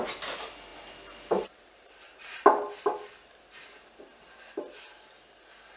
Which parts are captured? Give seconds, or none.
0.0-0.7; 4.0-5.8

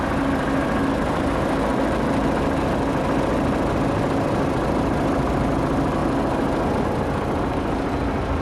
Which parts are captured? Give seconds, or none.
0.0-8.4

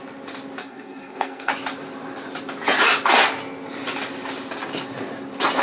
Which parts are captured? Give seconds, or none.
0.0-0.6; 1.5-5.6

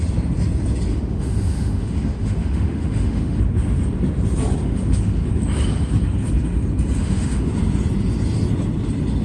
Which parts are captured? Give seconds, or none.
0.0-0.9; 3.4-4.6; 5.3-7.0; 7.5-9.2

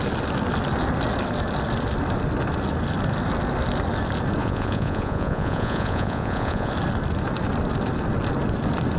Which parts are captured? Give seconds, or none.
0.0-4.4; 6.7-9.0

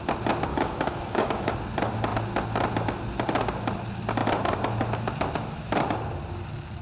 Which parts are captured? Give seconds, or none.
0.0-0.5; 1.5-6.8

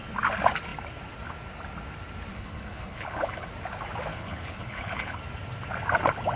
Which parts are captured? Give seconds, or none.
0.0-2.3; 3.5-4.1; 5.2-6.4